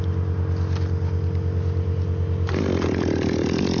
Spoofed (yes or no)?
no